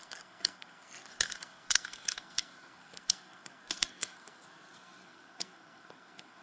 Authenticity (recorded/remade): remade